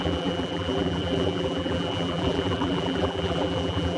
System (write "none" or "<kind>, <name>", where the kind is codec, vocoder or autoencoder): vocoder, BigVGAN v2